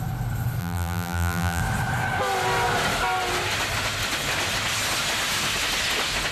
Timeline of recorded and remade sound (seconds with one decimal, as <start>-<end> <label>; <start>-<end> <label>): 0.0-0.6 recorded; 0.6-1.6 remade; 1.6-6.3 recorded